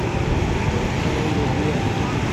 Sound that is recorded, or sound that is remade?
recorded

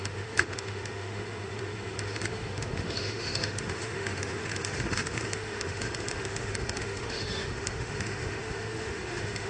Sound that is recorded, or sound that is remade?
remade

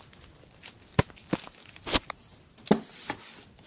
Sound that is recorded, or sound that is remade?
recorded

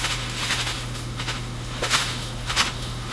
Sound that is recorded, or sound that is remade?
remade